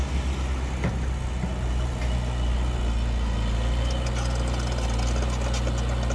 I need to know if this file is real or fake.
real